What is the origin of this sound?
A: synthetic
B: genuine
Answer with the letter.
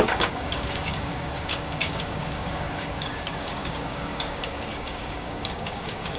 A